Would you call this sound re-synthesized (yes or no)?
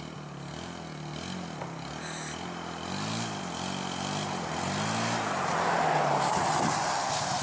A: no